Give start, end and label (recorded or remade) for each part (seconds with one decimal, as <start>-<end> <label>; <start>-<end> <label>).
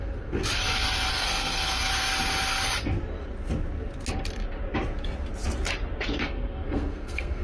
0.0-0.4 remade; 0.4-1.1 recorded; 1.1-1.8 remade; 1.8-6.2 recorded; 6.2-7.4 remade